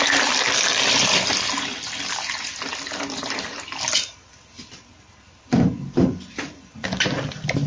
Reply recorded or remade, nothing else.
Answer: recorded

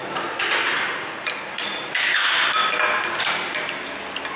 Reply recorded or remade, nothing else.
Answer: recorded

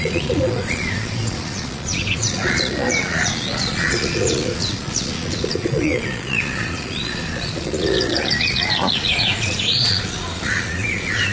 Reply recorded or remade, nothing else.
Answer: remade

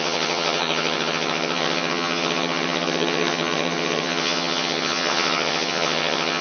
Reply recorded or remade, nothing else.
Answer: remade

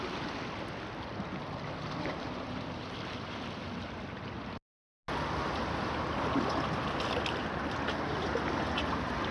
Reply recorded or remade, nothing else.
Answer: recorded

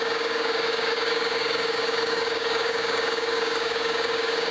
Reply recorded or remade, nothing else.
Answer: remade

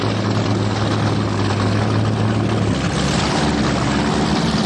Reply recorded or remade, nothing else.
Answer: recorded